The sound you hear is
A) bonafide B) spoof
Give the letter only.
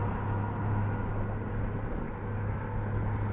A